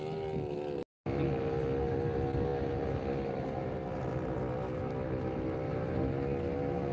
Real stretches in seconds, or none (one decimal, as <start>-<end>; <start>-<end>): 0.0-6.9